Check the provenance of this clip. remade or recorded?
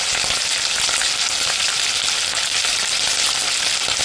recorded